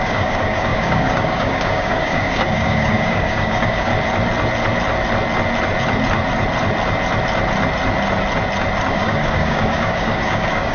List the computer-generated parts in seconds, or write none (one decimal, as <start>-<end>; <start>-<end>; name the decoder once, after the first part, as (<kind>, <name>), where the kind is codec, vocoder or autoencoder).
0.0-3.9 (codec, DAC); 8.9-10.7